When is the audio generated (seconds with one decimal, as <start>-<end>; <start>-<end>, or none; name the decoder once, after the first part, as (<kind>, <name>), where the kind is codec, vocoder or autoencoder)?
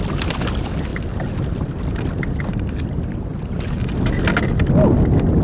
0.9-1.8 (vocoder, BigVGAN v2)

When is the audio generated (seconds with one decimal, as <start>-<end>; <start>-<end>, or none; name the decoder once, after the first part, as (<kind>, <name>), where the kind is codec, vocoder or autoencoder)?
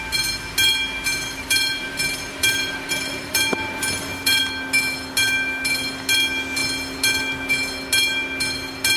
1.1-4.4 (vocoder, BigVGAN v2)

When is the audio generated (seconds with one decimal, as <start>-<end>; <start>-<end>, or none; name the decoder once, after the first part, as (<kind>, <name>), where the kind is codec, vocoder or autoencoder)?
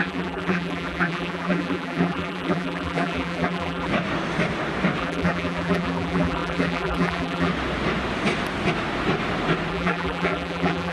0.0-3.9 (vocoder, BigVGAN v2); 5.0-7.5; 9.7-10.9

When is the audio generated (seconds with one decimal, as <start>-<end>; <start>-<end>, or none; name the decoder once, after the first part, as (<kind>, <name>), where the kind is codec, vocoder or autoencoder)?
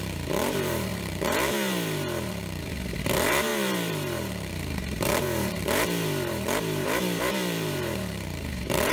0.0-8.9 (vocoder, BigVGAN v2)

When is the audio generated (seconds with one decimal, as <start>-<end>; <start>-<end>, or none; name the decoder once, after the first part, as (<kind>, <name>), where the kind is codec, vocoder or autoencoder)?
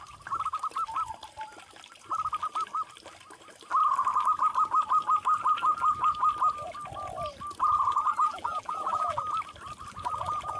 8.2-9.2 (vocoder, BigVGAN v2)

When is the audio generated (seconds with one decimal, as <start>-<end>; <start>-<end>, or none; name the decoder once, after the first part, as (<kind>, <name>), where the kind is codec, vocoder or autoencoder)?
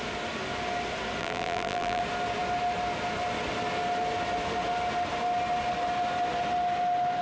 1.2-2.0 (vocoder, BigVGAN v2)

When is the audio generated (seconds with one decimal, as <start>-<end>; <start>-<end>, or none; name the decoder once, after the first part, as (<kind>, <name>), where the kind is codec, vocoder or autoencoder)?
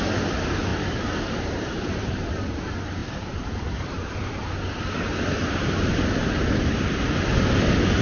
0.7-2.6 (vocoder, BigVGAN v2)